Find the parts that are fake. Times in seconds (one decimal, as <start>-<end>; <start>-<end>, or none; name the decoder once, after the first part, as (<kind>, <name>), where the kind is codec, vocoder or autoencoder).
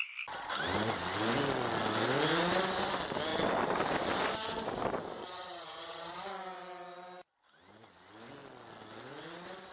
5.2-6.3 (vocoder, HiFi-GAN)